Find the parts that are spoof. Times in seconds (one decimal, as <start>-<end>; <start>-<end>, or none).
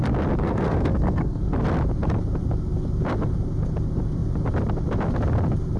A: 0.4-1.4